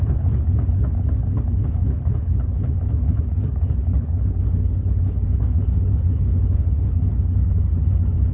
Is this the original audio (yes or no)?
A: no